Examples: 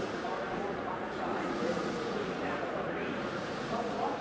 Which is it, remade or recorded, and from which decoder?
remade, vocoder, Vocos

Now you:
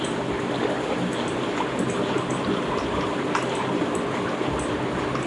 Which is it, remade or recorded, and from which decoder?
recorded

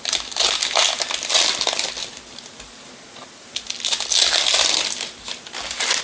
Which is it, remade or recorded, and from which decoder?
recorded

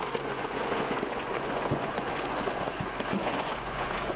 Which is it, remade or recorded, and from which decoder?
remade, vocoder, Vocos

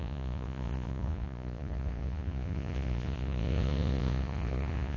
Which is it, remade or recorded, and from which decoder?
remade, vocoder, Vocos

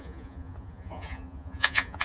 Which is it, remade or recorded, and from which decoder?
remade, vocoder, Vocos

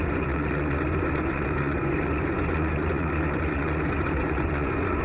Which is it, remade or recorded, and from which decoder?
remade, vocoder, Vocos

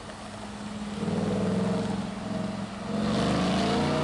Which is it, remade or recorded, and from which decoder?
recorded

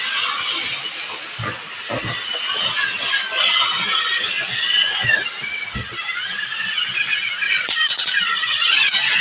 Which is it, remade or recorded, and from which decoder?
recorded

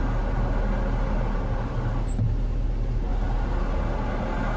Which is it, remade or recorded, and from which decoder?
recorded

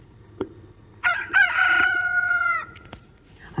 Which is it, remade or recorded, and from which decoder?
remade, vocoder, Vocos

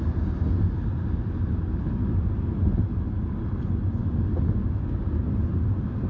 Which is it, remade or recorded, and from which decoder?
recorded